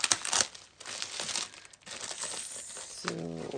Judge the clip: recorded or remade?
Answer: recorded